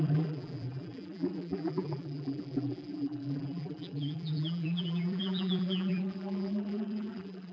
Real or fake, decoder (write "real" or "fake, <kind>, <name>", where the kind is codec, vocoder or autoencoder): fake, vocoder, BigVGAN v2